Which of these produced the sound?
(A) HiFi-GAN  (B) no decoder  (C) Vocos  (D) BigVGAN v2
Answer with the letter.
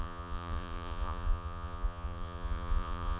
C